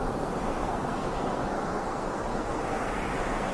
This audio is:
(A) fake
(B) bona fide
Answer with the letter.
A